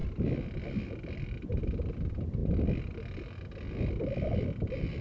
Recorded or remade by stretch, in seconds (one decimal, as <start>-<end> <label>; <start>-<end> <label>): 0.0-5.0 recorded